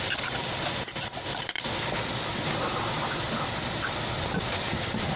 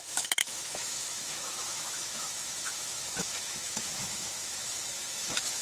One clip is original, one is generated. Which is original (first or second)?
first